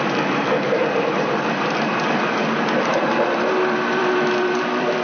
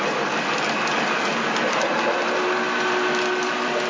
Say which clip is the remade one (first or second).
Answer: first